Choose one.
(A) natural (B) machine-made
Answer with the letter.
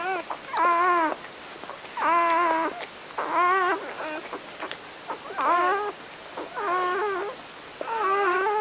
A